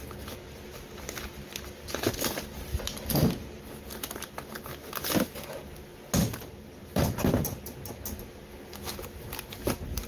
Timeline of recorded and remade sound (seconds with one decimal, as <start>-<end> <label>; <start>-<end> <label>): 0.0-10.1 recorded